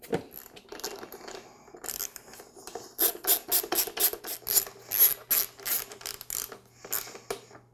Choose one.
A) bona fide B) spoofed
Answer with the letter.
A